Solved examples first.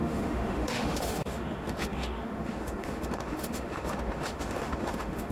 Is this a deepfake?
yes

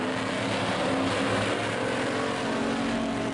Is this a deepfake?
no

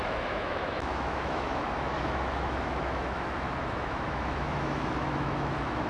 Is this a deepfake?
yes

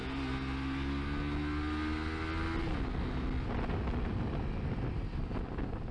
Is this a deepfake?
no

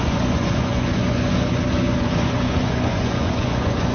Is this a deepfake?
yes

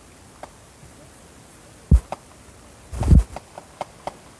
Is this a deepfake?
no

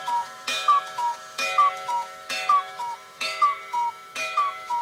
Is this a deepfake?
yes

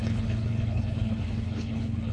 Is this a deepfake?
yes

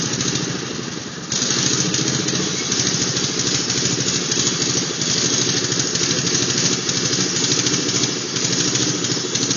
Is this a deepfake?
no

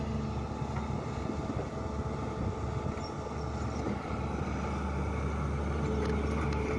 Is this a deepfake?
no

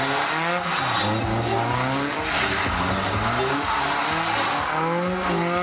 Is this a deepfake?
no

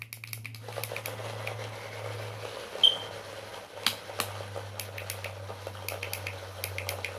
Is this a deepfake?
no